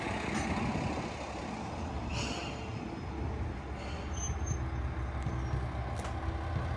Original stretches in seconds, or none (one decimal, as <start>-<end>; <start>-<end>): 0.0-6.8